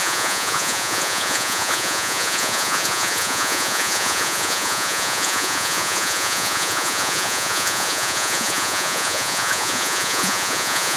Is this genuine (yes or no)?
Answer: no